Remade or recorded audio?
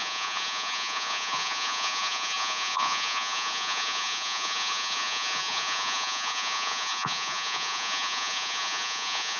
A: remade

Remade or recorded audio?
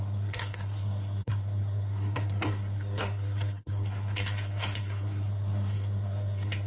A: remade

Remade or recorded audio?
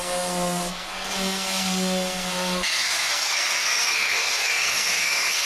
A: remade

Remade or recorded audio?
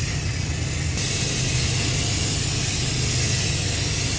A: recorded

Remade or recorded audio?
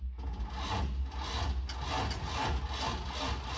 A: recorded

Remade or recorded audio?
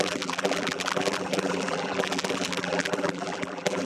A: remade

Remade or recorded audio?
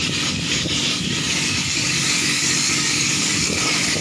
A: remade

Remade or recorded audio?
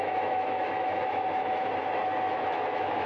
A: remade